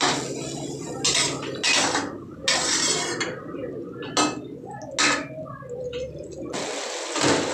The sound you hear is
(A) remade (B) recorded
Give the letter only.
B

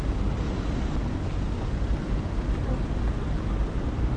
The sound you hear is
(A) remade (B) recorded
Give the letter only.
B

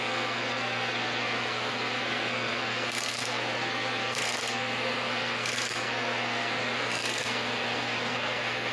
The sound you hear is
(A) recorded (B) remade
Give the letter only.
B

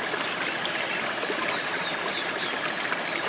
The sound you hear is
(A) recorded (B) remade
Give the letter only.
A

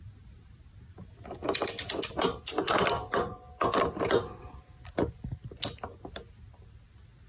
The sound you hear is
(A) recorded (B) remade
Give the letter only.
A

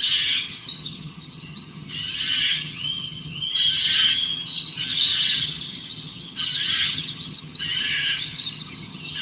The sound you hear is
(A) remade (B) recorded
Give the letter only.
A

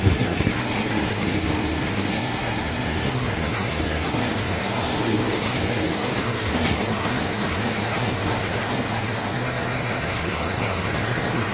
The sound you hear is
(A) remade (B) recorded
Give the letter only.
A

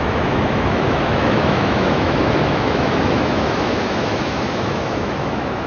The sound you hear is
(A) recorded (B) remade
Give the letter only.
B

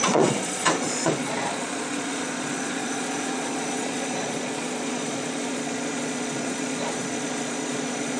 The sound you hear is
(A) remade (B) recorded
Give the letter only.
A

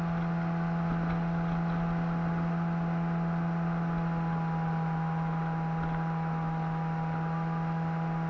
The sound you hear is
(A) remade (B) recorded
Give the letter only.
B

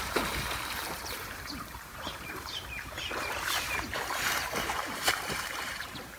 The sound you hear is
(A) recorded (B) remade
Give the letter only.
B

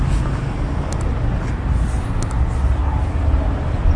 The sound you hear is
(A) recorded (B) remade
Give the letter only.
A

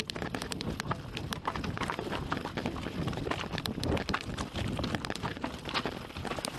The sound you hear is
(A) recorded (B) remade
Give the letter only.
A